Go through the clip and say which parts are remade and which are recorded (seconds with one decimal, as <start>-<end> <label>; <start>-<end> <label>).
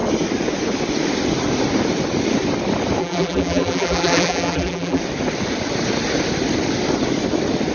0.0-3.0 recorded; 3.0-5.0 remade; 5.0-7.7 recorded